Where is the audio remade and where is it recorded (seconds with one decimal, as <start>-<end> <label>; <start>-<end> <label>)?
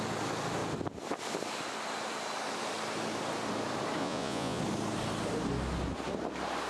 0.0-4.0 recorded; 4.0-4.6 remade; 4.6-6.7 recorded